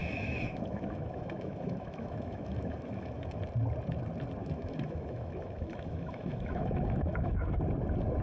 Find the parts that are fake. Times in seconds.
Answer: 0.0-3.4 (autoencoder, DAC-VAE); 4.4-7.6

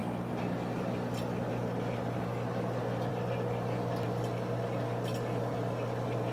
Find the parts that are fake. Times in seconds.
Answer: none

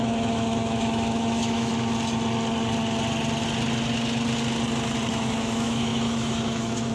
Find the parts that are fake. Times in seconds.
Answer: 0.0-1.7 (autoencoder, DAC-VAE); 5.1-6.9

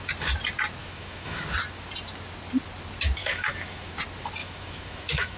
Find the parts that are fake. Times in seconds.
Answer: 0.8-1.4 (autoencoder, DAC-VAE); 3.2-3.9; 4.4-5.4

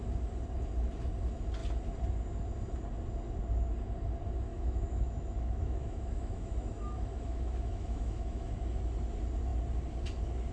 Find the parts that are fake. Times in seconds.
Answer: 4.5-8.5 (autoencoder, DAC-VAE)

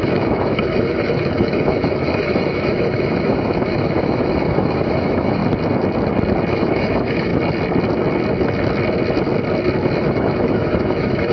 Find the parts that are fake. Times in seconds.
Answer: 0.0-5.4 (autoencoder, DAC-VAE); 6.5-7.3; 10.0-11.3